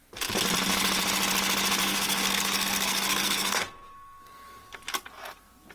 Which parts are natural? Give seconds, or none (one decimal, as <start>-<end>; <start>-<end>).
0.0-1.8; 4.6-5.7